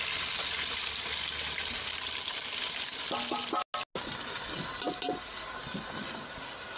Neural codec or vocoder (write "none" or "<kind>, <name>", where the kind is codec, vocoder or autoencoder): none